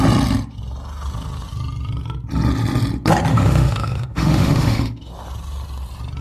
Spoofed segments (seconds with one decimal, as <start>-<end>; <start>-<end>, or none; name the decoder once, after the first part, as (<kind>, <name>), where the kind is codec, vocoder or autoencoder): 3.3-5.1 (autoencoder, DAC-VAE)